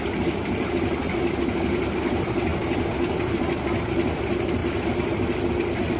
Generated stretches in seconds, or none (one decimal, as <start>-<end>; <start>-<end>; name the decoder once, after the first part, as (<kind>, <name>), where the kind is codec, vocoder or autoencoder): none